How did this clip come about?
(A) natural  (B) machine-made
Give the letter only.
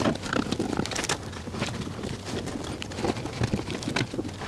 A